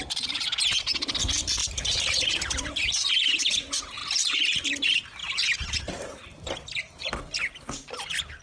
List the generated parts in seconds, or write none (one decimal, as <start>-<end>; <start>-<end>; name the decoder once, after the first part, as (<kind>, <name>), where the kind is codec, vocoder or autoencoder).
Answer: 1.6-3.1 (vocoder, BigVGAN v2); 4.0-4.7; 5.2-5.8